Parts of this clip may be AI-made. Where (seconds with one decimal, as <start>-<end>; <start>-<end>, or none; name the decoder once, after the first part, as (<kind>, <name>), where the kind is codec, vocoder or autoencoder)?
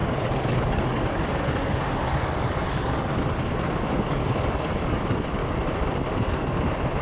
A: 0.0-3.1 (codec, DAC); 3.9-5.4